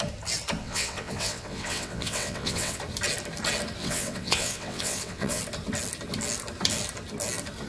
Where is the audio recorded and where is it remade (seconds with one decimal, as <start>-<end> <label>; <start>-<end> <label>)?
0.0-0.6 recorded; 0.6-2.8 remade; 2.8-3.8 recorded; 3.8-5.4 remade; 5.4-7.7 recorded